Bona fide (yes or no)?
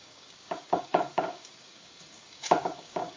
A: no